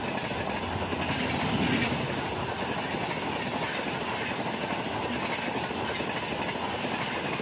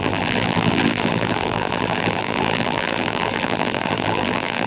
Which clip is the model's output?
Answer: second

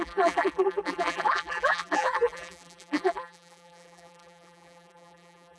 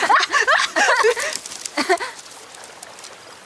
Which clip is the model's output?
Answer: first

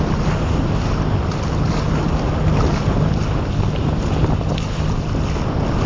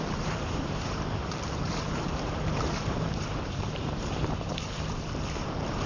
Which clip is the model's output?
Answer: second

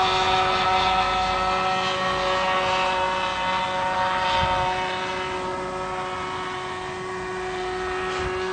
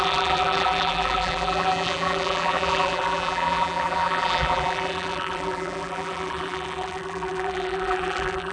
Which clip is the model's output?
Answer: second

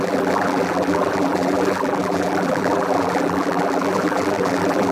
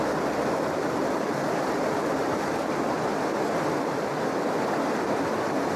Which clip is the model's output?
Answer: first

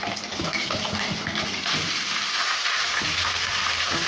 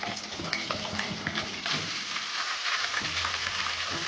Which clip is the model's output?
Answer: first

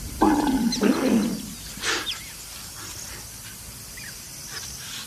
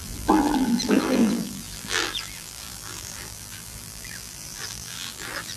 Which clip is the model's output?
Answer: second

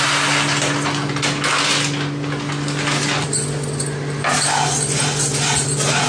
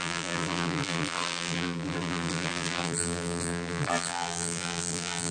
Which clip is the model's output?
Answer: second